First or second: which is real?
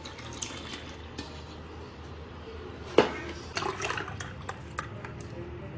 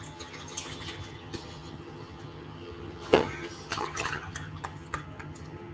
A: first